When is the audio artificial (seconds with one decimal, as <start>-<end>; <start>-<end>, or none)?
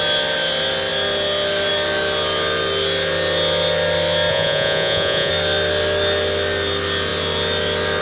4.3-5.3